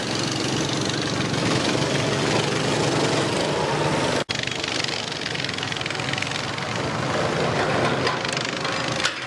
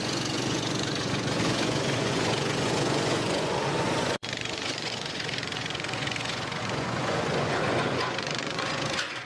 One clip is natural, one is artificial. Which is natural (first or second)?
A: first